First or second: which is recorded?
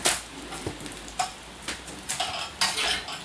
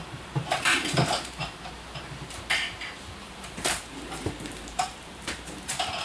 first